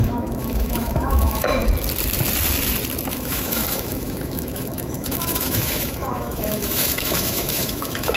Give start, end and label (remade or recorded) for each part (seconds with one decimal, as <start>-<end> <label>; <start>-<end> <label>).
0.0-1.6 remade; 1.6-3.1 recorded; 3.1-8.2 remade